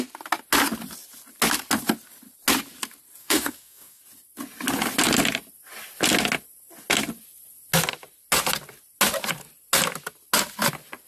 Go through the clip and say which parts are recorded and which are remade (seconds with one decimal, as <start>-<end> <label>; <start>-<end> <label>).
0.0-3.2 recorded; 3.2-4.0 remade; 4.0-11.1 recorded